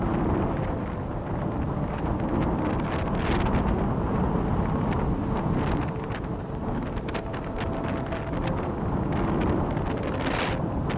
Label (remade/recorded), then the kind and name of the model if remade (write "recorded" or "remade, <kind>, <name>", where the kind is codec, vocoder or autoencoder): recorded